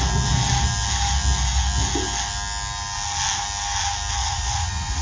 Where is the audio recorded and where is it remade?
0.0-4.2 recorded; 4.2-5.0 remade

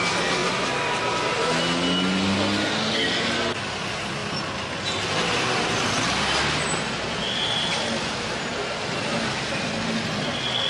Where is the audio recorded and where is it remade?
0.0-10.7 recorded

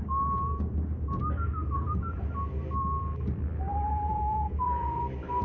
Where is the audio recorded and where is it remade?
0.0-1.6 recorded; 1.6-2.2 remade; 2.2-3.7 recorded; 3.7-5.0 remade; 5.0-5.4 recorded

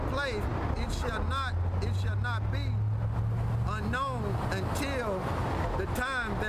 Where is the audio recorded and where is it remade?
0.0-6.5 recorded

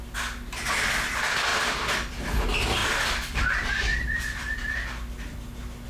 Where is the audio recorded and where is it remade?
0.0-1.5 recorded; 1.5-2.1 remade; 2.1-2.8 recorded; 2.8-3.4 remade; 3.4-3.9 recorded; 3.9-5.4 remade; 5.4-5.9 recorded

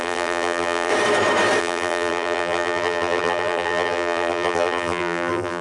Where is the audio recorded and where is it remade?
0.0-0.9 remade; 0.9-1.6 recorded; 1.6-5.6 remade

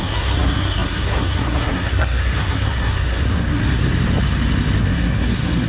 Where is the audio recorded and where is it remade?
0.0-3.8 remade; 3.8-4.8 recorded; 4.8-5.7 remade